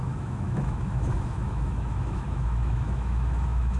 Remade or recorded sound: remade